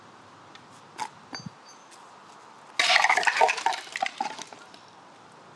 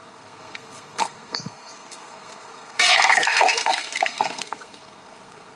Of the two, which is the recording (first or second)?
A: first